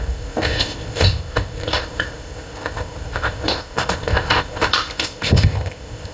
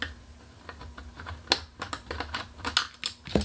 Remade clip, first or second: first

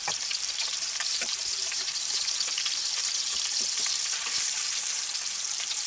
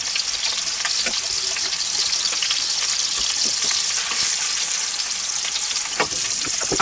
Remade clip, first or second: first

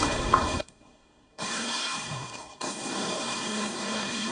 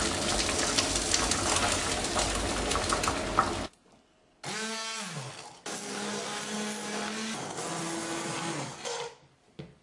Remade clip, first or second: first